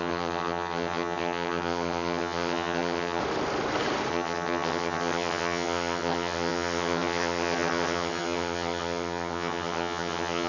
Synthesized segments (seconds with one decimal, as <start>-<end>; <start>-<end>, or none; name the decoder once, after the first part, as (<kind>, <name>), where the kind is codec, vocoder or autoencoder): 0.0-3.2 (vocoder, HiFi-GAN); 4.1-10.5